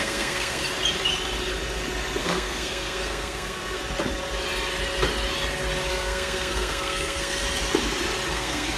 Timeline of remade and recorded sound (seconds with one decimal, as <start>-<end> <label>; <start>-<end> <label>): 0.0-0.6 remade; 0.6-2.2 recorded; 2.2-3.8 remade; 3.8-5.9 recorded; 5.9-7.4 remade; 7.4-8.3 recorded; 8.3-8.8 remade